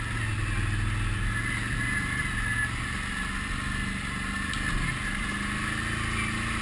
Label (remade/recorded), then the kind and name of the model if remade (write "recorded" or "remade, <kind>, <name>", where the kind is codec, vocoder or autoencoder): recorded